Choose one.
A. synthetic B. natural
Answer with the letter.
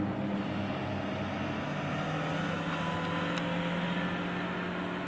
B